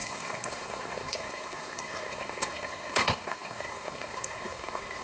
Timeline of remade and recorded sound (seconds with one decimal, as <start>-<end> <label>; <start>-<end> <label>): 0.0-5.0 remade